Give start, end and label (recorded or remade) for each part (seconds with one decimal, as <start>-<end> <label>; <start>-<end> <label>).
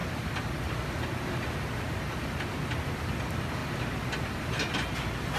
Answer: 0.0-0.7 remade; 0.7-5.4 recorded